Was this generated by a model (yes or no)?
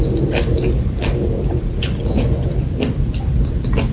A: no